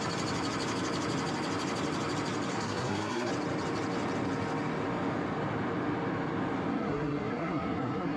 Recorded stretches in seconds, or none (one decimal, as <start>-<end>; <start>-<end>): 0.0-2.5; 3.3-6.7